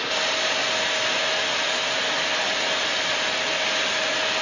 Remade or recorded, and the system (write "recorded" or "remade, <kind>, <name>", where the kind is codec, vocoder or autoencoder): recorded